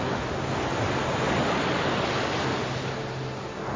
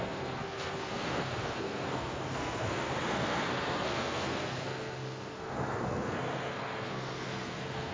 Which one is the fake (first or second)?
second